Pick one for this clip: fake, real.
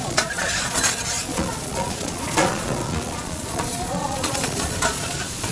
fake